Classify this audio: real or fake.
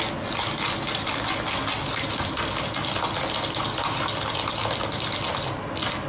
real